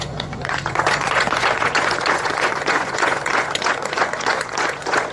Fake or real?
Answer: fake